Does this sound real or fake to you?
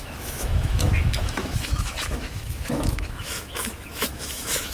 fake